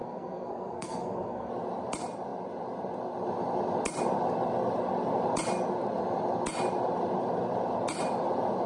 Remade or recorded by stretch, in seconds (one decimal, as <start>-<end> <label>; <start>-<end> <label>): 0.0-1.5 remade; 1.5-8.7 recorded